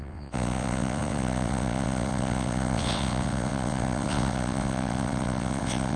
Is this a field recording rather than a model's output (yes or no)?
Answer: no